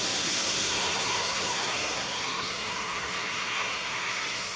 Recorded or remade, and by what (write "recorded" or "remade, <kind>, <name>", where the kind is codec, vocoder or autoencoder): remade, codec, SNAC